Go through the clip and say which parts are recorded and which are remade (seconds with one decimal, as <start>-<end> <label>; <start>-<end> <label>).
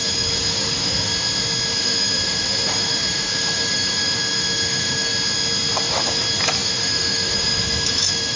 0.0-1.1 remade; 1.1-1.8 recorded; 1.8-5.1 remade; 5.1-5.9 recorded; 5.9-8.4 remade